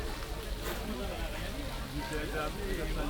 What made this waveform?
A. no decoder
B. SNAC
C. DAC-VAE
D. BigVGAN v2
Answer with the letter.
A